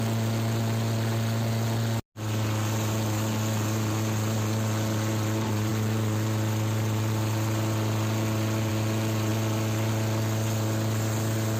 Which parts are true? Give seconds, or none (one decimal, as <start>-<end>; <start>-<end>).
0.0-11.6